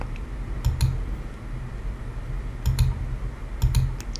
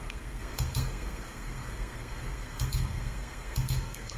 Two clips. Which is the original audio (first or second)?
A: first